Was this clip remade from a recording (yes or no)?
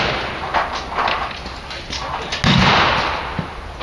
no